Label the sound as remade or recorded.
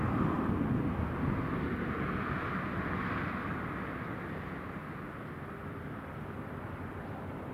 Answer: recorded